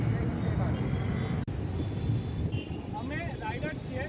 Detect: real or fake real